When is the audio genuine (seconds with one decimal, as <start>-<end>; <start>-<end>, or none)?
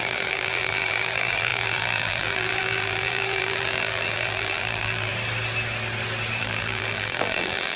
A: 5.1-6.4